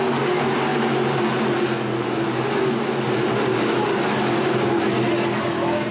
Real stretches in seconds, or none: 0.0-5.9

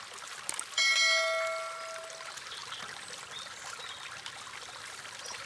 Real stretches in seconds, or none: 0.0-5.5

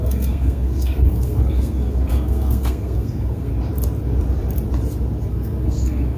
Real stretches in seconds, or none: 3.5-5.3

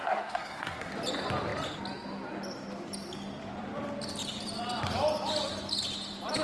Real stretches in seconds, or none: 0.9-6.4

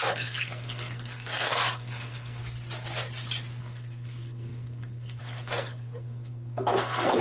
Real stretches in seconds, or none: 2.4-3.6

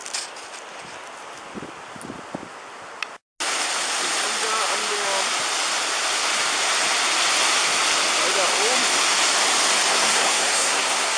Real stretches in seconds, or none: 0.0-9.9

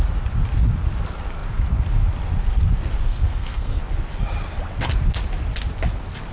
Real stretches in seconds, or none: 0.0-3.0; 3.8-6.3

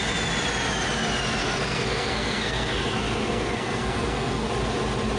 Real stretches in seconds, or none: 0.0-1.4; 4.5-5.2